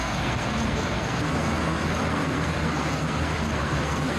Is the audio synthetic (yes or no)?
yes